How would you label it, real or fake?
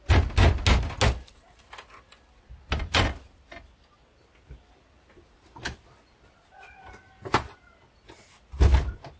real